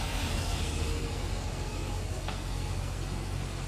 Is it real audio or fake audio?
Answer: fake